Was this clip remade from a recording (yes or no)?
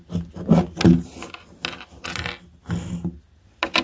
no